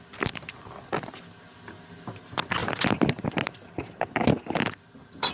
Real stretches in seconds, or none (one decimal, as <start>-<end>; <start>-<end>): 0.0-5.3